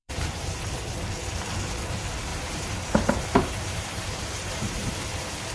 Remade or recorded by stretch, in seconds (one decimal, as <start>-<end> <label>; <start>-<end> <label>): 0.0-0.6 remade; 0.6-2.3 recorded; 2.3-4.9 remade; 4.9-5.5 recorded